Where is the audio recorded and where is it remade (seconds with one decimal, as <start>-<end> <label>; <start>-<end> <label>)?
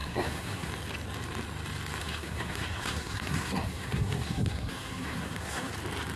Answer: 0.0-0.7 remade; 0.7-2.0 recorded; 2.0-5.7 remade; 5.7-6.2 recorded